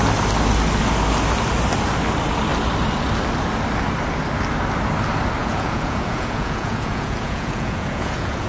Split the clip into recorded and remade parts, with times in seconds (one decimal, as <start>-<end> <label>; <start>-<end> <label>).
0.0-5.4 recorded; 5.4-8.5 remade